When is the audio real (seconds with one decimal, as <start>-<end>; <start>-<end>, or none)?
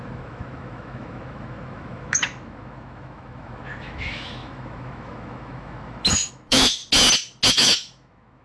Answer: 6.8-7.5